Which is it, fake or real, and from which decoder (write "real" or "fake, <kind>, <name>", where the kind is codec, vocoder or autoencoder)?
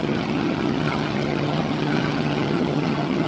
fake, vocoder, HiFi-GAN